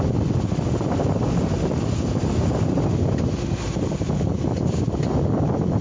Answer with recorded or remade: recorded